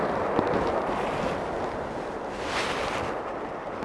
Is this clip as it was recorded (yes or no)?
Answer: yes